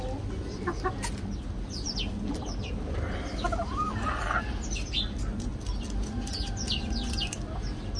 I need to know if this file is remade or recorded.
recorded